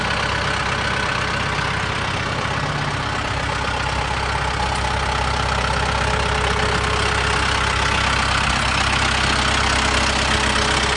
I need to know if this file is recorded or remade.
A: recorded